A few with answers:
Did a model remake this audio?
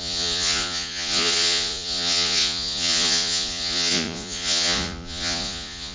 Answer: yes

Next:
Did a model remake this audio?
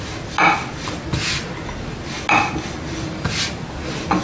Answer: no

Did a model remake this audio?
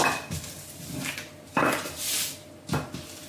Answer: no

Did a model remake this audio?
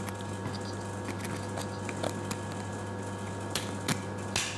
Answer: no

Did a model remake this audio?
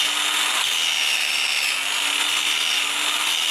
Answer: no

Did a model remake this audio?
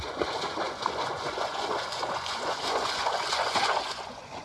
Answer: yes